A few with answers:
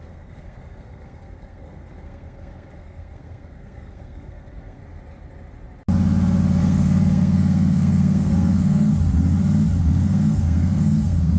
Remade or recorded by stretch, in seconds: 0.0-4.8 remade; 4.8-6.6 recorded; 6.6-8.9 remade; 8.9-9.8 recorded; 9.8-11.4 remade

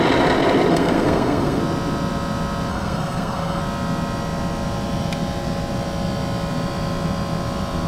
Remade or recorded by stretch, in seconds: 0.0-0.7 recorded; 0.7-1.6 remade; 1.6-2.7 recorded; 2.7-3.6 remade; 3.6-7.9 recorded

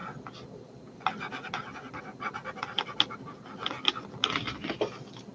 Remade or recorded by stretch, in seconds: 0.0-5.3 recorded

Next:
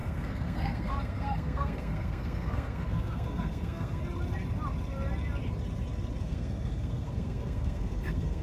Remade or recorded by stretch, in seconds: 0.0-4.0 remade; 4.0-6.2 recorded; 6.2-8.4 remade

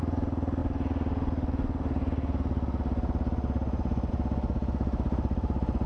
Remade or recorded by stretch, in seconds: 0.0-5.9 recorded

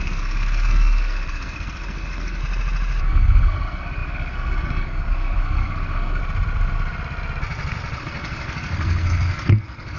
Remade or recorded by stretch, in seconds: 0.0-2.4 remade; 2.4-3.0 recorded; 3.0-6.2 remade; 6.2-8.0 recorded; 8.0-10.0 remade

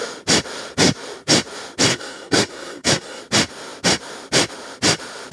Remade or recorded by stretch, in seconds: 0.0-1.9 recorded; 1.9-3.2 remade; 3.2-5.3 recorded